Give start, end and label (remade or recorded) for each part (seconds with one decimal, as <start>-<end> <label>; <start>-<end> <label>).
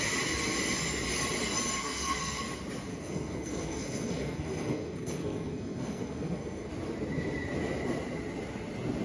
0.0-1.8 recorded; 1.8-2.4 remade; 2.4-2.9 recorded; 2.9-6.7 remade; 6.7-9.0 recorded